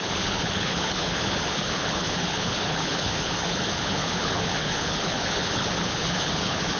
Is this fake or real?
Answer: fake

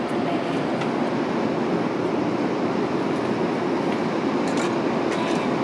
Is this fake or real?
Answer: real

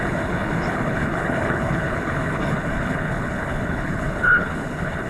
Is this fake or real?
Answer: fake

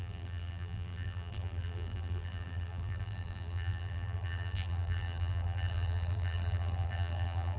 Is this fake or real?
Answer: fake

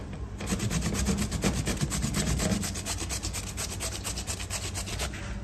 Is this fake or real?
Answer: real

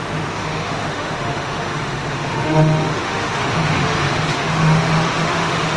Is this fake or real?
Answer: fake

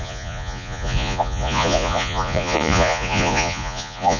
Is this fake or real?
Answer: fake